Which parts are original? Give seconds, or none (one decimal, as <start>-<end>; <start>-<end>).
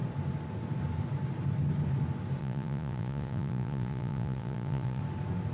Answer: 0.0-2.4; 5.0-5.5